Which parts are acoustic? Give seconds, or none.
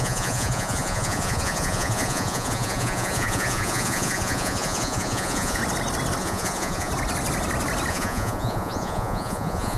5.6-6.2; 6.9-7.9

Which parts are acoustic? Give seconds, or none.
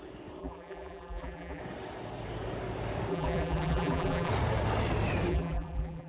0.0-0.4; 1.6-3.1; 4.3-5.3